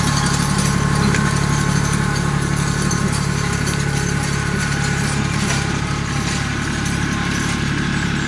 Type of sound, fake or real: fake